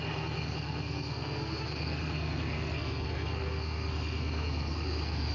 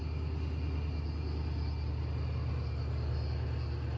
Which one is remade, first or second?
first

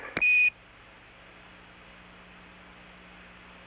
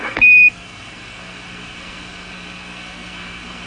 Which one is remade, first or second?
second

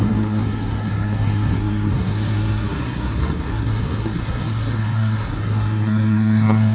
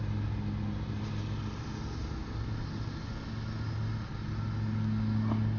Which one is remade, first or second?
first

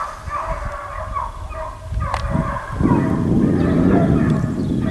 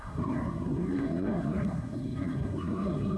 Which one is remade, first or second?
second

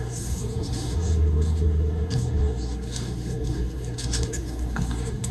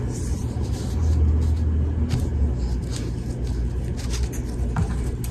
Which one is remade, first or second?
first